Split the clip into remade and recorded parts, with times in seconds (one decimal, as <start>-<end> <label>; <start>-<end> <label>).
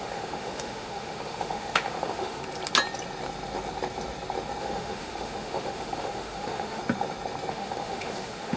0.0-2.4 remade; 2.4-4.6 recorded; 4.6-6.8 remade; 6.8-7.5 recorded; 7.5-8.6 remade